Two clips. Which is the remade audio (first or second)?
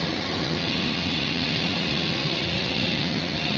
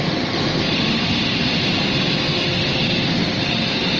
first